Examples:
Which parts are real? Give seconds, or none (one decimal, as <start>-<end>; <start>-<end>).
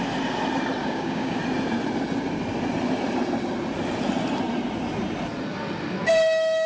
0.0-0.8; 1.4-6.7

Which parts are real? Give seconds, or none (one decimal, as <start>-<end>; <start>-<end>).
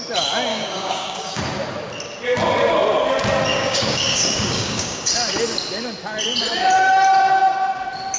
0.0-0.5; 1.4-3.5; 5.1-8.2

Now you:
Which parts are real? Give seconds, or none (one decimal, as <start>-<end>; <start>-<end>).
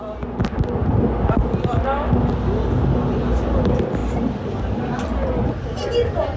0.0-6.4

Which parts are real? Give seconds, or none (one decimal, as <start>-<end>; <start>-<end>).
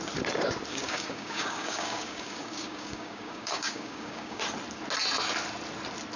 0.0-0.7; 4.4-6.2